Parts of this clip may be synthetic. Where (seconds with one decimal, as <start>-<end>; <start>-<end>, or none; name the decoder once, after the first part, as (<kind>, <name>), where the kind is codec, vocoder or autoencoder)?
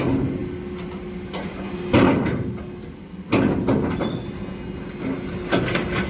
none